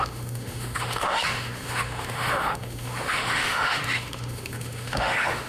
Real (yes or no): no